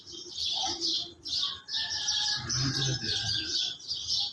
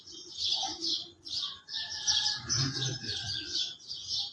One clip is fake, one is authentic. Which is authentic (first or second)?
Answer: first